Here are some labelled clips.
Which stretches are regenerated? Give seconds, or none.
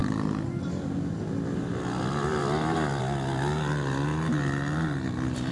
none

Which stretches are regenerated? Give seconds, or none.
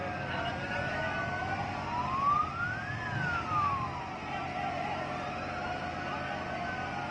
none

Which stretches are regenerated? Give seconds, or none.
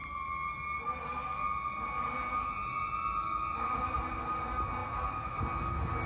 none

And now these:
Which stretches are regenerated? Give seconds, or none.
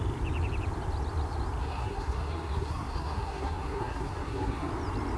1.6-4.7 (codec, SNAC)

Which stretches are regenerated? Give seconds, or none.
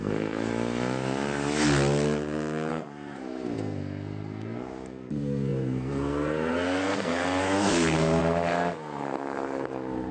0.0-0.5 (codec, SNAC); 2.7-10.1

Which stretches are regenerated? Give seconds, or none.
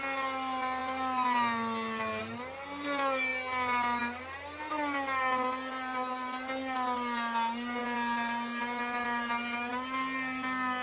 none